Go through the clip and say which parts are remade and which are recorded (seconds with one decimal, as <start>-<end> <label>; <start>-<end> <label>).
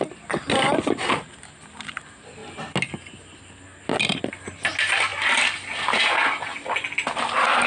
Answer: 0.0-7.7 recorded